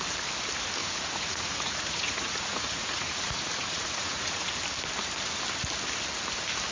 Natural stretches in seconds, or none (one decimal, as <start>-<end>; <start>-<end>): 0.0-0.8; 4.5-6.7